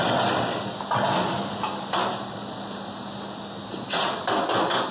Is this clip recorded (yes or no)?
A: yes